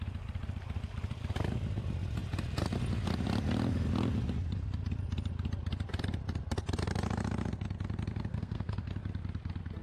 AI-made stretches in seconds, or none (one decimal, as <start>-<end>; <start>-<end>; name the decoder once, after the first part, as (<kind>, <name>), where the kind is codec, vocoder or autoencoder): 8.3-8.9 (codec, SNAC)